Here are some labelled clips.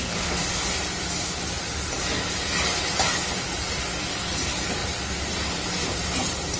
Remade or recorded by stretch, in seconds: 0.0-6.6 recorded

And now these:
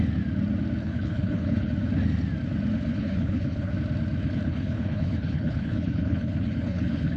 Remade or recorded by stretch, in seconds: 0.0-0.8 recorded; 0.8-1.7 remade; 1.7-2.9 recorded; 2.9-3.7 remade; 3.7-4.2 recorded; 4.2-7.2 remade

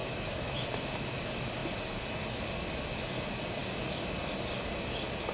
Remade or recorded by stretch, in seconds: 0.0-0.6 remade; 0.6-5.3 recorded